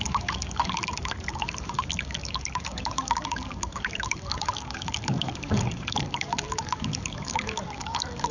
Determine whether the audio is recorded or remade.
remade